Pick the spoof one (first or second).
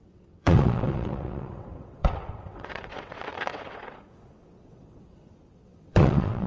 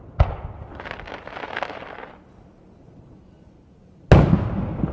first